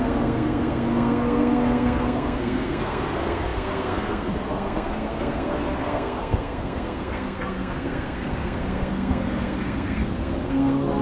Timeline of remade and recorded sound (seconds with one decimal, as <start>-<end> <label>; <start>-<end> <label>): 0.0-11.0 remade